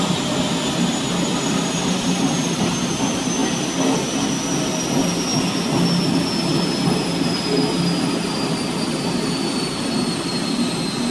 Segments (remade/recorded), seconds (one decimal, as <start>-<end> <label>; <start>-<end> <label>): 0.0-11.1 recorded